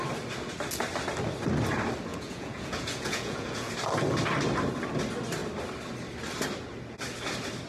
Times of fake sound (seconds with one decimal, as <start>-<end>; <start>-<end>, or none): 2.1-3.7